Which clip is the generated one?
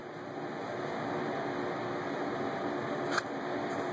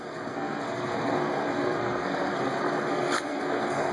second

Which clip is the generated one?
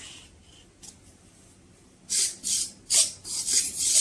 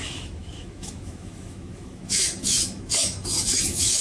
second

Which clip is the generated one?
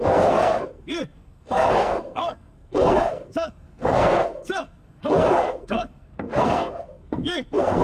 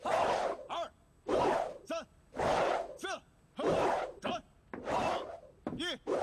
first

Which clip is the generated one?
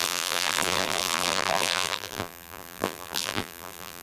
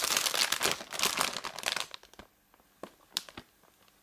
first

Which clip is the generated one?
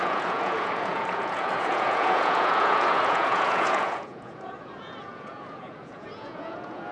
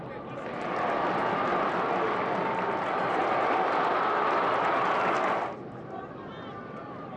first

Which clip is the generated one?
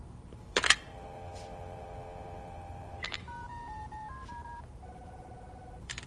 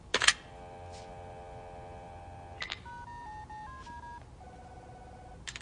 first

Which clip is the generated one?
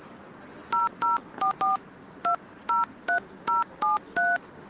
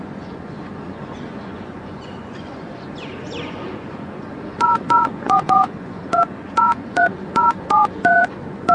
second